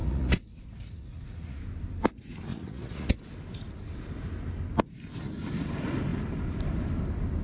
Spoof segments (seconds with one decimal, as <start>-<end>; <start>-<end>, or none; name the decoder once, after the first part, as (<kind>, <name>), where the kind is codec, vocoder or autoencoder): 0.0-1.6 (vocoder, Vocos); 2.5-3.3